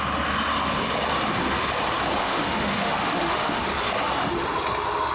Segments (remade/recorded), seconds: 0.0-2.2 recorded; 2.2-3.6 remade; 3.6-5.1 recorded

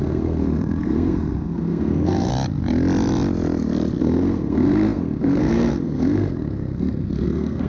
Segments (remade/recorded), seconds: 0.0-2.3 remade; 2.3-4.0 recorded; 4.0-7.7 remade

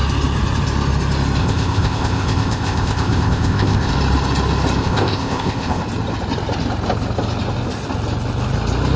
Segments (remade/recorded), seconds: 0.0-1.4 recorded; 1.4-3.9 remade; 3.9-4.8 recorded; 4.8-5.8 remade; 5.8-9.0 recorded

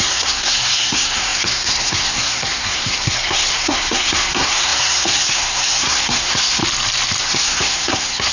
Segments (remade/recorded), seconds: 0.0-6.6 remade; 6.6-7.2 recorded; 7.2-8.3 remade

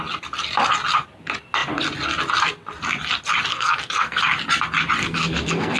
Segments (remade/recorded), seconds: 0.0-3.5 recorded; 3.5-4.2 remade; 4.2-5.0 recorded; 5.0-5.8 remade

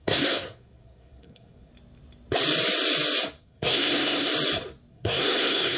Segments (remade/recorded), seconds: 0.0-1.7 remade; 1.7-3.4 recorded; 3.4-4.3 remade; 4.3-4.9 recorded; 4.9-5.8 remade

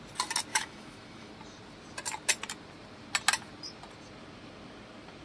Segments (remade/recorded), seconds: 0.0-0.5 recorded; 0.5-1.3 remade; 1.3-5.2 recorded